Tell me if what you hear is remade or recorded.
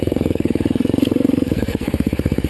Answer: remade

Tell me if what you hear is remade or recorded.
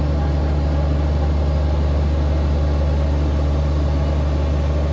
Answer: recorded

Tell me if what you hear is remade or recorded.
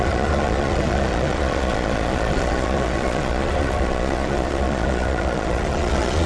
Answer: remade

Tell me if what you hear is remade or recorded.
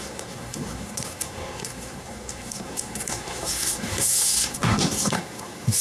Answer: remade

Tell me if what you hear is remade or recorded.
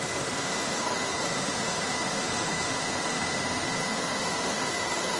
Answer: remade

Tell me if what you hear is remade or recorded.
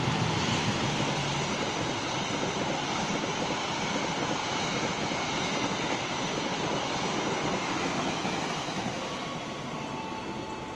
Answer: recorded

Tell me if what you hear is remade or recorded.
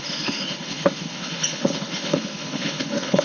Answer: remade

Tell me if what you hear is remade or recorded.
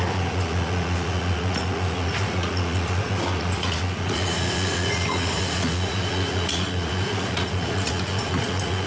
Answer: remade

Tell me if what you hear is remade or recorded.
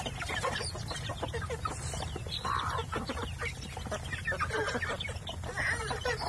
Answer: recorded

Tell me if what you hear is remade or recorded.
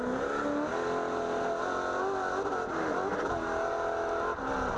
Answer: recorded